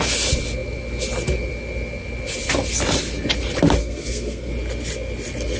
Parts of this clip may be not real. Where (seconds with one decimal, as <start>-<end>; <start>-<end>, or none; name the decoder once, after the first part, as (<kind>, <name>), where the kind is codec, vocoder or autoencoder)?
3.8-4.5 (codec, SNAC)